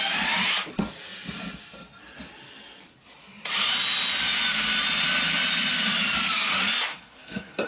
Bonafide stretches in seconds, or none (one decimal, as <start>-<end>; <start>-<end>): 0.0-6.9